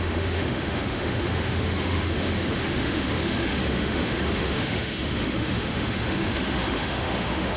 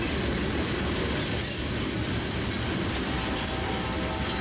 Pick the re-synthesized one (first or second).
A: first